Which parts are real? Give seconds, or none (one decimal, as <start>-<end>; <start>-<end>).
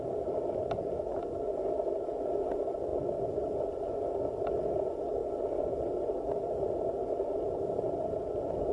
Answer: 0.0-8.7